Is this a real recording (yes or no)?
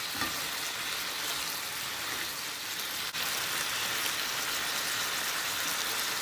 yes